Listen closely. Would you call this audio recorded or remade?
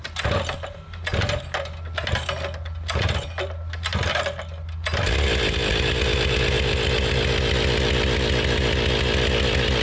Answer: recorded